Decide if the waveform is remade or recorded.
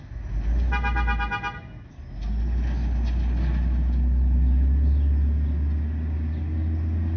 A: recorded